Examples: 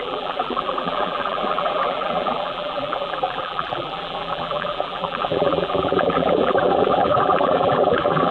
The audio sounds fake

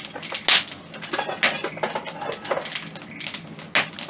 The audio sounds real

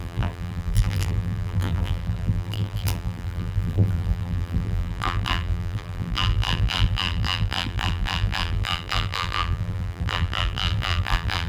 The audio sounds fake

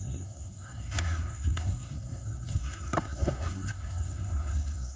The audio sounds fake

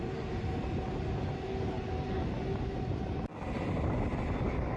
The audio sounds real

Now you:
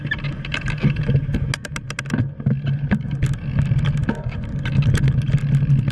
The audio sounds real